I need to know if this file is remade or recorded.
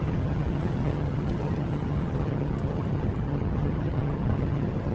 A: remade